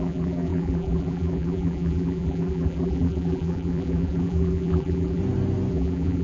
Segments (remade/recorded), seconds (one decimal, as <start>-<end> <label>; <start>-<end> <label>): 0.0-5.2 remade; 5.2-5.7 recorded; 5.7-6.2 remade